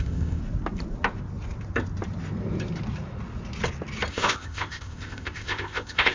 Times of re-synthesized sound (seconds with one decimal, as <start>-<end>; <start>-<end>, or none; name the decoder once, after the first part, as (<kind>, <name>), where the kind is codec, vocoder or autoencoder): 0.0-0.4 (codec, ZipCodec); 4.1-6.1